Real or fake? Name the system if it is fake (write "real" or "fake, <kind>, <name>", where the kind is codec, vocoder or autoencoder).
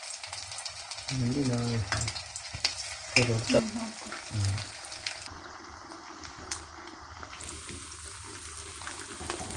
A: real